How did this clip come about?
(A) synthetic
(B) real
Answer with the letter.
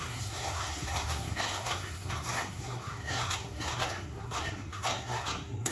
A